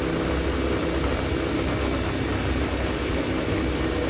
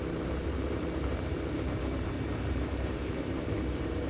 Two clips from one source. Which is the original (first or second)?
first